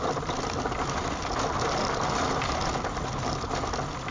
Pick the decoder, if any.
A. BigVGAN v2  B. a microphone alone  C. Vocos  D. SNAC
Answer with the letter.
B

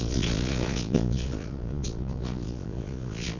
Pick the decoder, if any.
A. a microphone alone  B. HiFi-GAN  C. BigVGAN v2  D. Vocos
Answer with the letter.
D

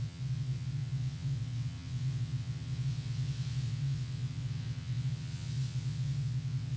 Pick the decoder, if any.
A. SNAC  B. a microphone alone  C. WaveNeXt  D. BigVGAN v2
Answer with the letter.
C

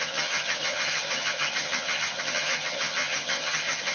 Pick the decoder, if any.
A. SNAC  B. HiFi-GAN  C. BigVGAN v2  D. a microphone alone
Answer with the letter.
B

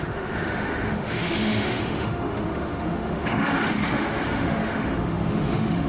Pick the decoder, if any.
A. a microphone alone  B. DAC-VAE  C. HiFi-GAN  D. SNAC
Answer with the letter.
B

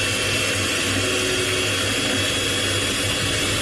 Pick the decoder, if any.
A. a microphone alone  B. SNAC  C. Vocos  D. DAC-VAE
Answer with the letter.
A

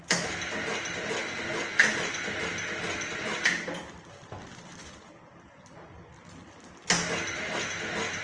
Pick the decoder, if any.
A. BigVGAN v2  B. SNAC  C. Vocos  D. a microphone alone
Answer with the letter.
D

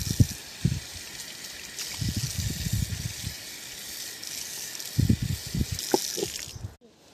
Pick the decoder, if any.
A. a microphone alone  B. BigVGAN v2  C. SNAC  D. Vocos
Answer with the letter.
A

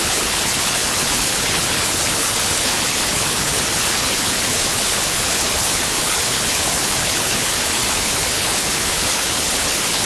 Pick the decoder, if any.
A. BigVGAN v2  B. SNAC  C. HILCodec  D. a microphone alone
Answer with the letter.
C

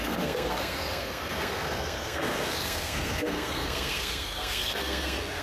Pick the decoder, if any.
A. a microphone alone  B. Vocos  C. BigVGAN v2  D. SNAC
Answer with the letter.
D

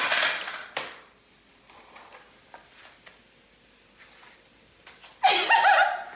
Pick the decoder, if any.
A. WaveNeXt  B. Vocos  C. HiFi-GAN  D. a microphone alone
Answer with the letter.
D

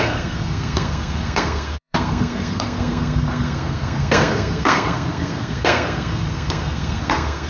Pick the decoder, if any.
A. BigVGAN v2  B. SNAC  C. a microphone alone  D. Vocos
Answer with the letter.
B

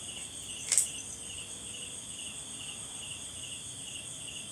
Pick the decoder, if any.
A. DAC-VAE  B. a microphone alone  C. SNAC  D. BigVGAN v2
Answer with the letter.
B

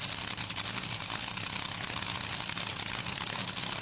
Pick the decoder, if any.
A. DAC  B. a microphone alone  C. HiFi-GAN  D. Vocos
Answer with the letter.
B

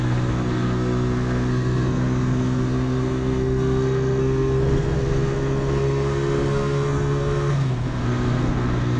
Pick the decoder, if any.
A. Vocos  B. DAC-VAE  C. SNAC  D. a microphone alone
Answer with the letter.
C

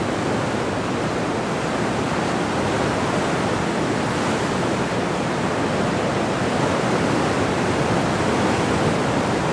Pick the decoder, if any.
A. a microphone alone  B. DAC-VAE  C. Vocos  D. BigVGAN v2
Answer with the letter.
A